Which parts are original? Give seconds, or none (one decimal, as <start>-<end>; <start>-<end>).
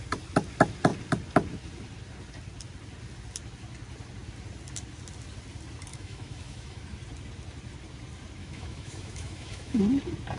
0.0-5.9; 6.8-8.4; 9.8-10.4